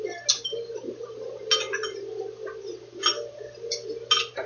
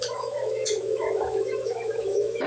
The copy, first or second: second